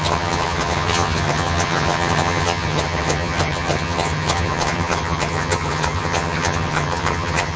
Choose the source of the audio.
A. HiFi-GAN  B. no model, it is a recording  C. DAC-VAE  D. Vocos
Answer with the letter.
A